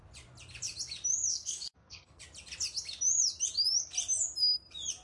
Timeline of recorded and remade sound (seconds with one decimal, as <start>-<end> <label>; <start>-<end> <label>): 0.0-1.3 recorded; 1.3-2.2 remade; 2.2-5.0 recorded